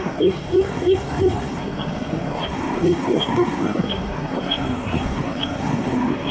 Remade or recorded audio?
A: remade